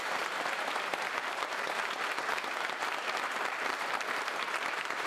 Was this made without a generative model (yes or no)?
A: no